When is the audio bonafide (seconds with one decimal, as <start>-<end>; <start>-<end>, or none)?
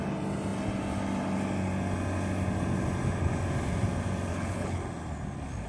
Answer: 0.0-4.3; 4.8-5.7